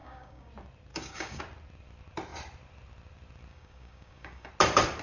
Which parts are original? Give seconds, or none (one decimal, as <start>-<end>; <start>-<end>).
0.5-0.9; 1.4-3.5; 4.5-5.0